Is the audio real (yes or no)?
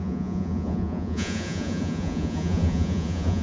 no